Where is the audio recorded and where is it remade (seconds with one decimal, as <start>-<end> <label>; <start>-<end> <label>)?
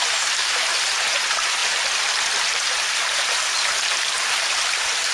0.0-5.1 recorded